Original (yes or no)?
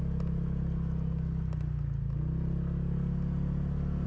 yes